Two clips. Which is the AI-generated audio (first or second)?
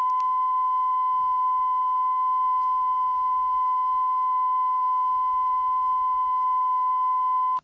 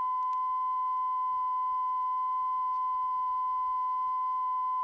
first